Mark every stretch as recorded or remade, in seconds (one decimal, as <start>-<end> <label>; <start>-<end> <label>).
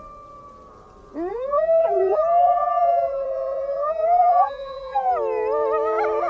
0.0-1.3 recorded; 1.3-5.1 remade; 5.1-6.3 recorded